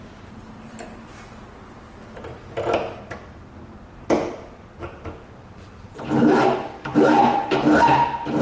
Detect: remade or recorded recorded